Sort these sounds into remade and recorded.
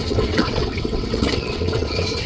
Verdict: remade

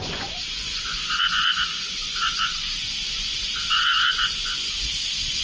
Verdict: remade